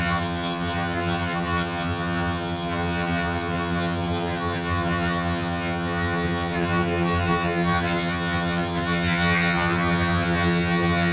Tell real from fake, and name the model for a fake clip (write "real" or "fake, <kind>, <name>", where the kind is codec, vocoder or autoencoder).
fake, vocoder, HiFi-GAN